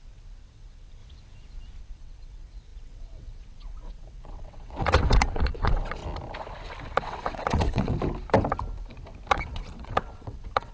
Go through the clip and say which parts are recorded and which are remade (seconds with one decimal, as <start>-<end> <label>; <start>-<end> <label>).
0.0-1.0 remade; 1.0-1.8 recorded; 1.8-6.0 remade; 6.0-6.8 recorded; 6.8-7.9 remade; 7.9-9.3 recorded; 9.3-10.7 remade